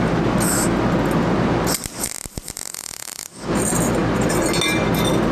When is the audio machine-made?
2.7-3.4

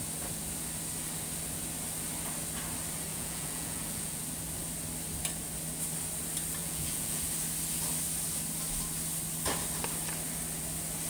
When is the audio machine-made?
3.1-4.2; 6.6-7.2